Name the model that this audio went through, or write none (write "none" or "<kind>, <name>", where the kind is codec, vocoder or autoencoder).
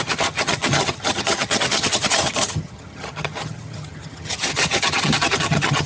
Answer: vocoder, HiFi-GAN